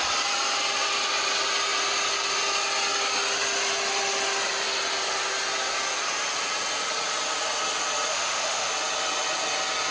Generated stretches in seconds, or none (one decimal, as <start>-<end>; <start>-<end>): 8.1-8.7